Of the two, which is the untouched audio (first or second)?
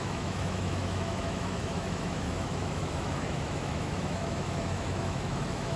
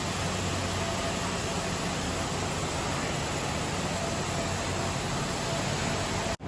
second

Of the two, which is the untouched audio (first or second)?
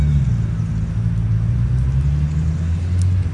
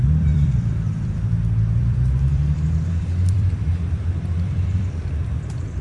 first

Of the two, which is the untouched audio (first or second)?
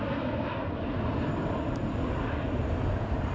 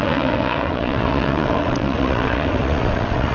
first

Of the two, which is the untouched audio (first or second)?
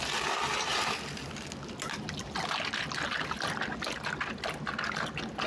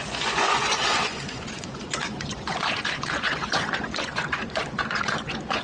first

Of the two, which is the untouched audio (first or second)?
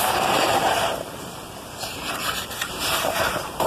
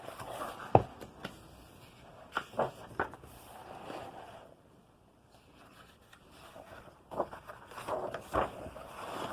second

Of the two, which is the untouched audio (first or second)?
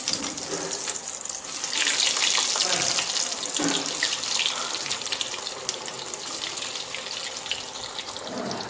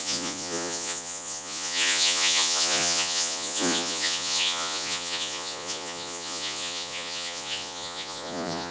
first